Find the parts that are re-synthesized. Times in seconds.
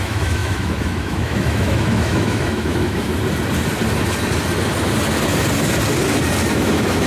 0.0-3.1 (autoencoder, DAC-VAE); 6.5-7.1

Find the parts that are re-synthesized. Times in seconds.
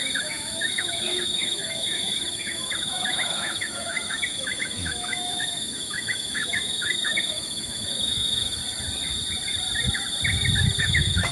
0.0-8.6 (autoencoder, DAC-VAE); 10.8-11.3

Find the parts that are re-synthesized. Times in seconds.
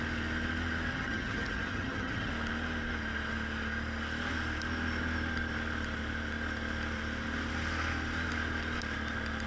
0.9-2.3 (vocoder, HiFi-GAN)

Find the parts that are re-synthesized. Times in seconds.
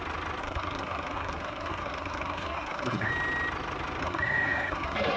0.4-3.1 (codec, SNAC); 4.0-5.2